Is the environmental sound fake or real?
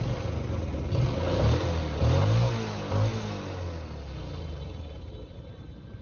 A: real